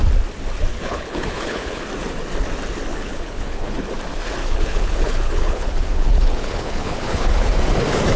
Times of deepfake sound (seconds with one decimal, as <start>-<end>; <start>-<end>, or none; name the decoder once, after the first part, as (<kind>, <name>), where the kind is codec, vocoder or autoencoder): 0.7-1.8 (codec, HILCodec); 2.9-3.8; 4.4-7.5